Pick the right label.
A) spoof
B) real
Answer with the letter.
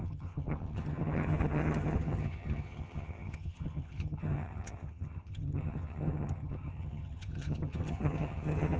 A